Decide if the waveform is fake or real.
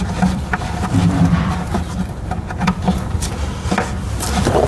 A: fake